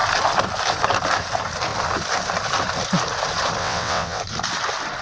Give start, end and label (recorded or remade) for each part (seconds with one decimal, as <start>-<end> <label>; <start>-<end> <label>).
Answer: 0.0-3.6 recorded; 3.6-4.2 remade; 4.2-5.0 recorded